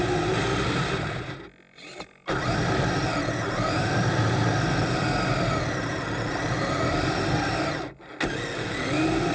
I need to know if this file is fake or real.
real